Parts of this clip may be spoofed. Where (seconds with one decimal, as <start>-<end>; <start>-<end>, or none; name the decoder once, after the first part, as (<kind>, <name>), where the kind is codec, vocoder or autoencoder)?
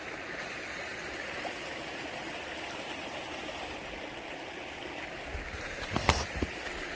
none